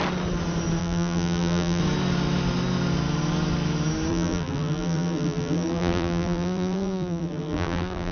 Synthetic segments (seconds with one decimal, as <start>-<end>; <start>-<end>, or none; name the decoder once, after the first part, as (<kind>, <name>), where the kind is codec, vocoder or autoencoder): 0.8-1.8 (vocoder, BigVGAN v2); 4.1-8.1